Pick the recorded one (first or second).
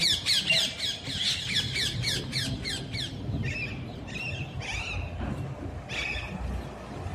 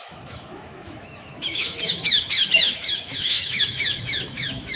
first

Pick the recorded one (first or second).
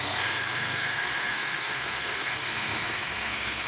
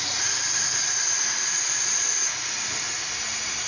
second